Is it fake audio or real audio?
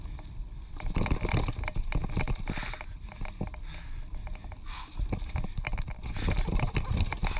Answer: real